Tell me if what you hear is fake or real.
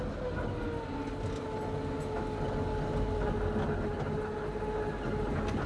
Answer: real